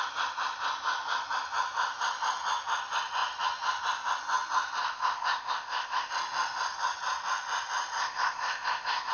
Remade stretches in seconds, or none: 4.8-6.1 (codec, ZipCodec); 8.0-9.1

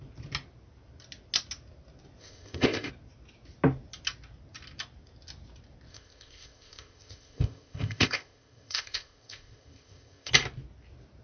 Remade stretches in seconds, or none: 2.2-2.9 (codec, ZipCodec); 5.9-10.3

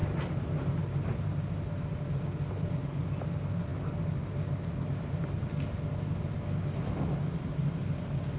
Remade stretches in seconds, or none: none

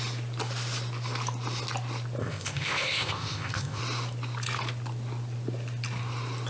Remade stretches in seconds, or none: 2.2-3.8 (codec, ZipCodec)

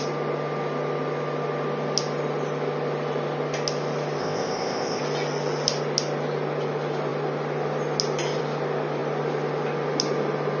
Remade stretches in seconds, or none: 4.2-5.0 (codec, ZipCodec)

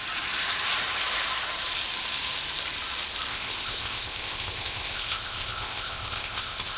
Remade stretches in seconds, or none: 3.3-6.8 (codec, ZipCodec)

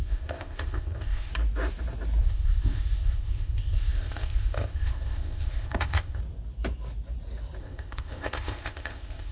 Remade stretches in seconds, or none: 0.0-1.3 (codec, ZipCodec); 2.2-6.2; 7.6-9.3